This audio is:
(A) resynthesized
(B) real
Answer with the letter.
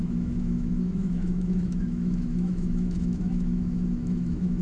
A